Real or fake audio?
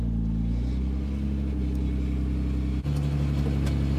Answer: real